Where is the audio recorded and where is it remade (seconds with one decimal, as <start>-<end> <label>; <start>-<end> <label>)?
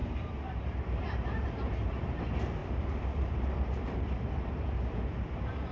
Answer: 0.0-2.2 remade; 2.2-2.6 recorded; 2.6-4.7 remade; 4.7-5.7 recorded